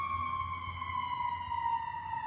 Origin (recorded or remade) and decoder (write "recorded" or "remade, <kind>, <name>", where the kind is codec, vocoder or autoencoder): recorded